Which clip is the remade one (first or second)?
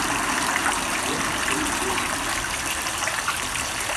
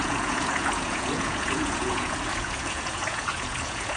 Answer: second